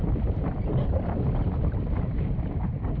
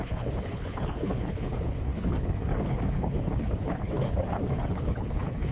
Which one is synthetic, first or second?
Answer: second